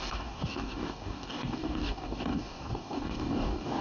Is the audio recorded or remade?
remade